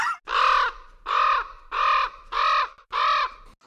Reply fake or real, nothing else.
real